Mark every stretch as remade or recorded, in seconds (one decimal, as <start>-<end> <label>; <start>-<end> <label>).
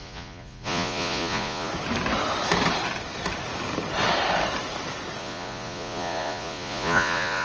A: 0.0-1.7 remade; 1.7-5.2 recorded; 5.2-7.4 remade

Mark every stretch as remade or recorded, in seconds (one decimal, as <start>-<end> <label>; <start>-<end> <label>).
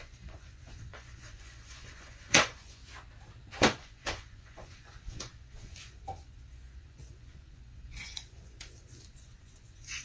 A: 0.0-2.8 remade; 2.8-3.6 recorded; 3.6-10.0 remade